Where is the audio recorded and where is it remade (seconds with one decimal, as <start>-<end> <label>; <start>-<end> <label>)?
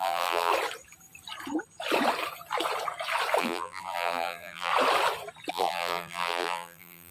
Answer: 0.0-0.5 remade; 0.5-3.4 recorded; 3.4-4.7 remade; 4.7-5.5 recorded; 5.5-7.1 remade